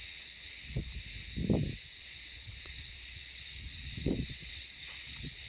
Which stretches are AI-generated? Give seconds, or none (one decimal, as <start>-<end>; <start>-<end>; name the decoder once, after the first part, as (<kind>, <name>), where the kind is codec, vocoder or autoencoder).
0.0-0.9 (vocoder, WaveNeXt); 2.0-5.5